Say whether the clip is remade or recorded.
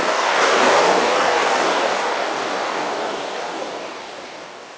remade